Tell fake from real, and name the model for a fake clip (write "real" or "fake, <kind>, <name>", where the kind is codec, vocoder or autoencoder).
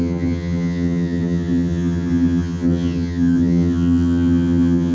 fake, vocoder, HiFi-GAN